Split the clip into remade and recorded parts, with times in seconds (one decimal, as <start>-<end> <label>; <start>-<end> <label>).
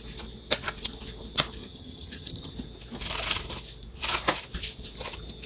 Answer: 0.0-1.6 recorded; 1.6-2.5 remade; 2.5-5.5 recorded